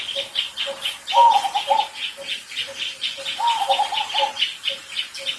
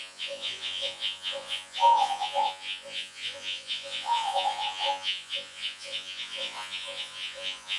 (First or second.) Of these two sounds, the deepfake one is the second